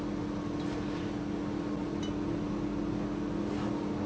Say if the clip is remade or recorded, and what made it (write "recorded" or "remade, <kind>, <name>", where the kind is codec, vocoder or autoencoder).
recorded